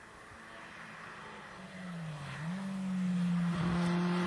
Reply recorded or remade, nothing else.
recorded